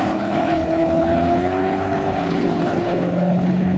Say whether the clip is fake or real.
fake